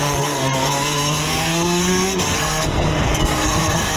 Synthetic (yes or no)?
yes